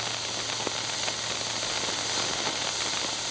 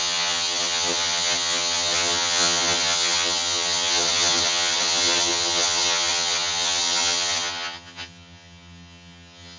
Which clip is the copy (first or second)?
second